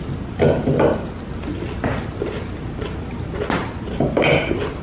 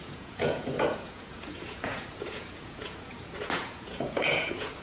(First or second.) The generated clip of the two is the second